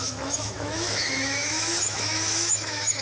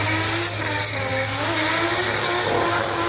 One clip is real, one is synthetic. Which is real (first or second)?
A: second